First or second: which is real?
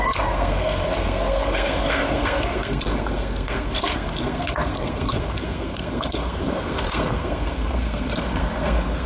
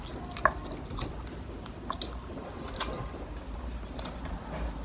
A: second